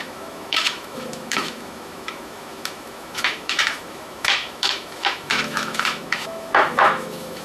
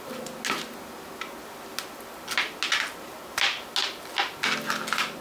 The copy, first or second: first